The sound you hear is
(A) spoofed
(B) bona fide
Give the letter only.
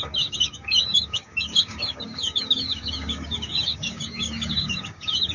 A